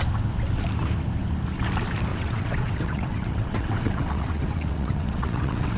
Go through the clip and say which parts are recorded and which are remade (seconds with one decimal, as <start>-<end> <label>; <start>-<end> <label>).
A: 0.0-2.1 recorded; 2.1-5.8 remade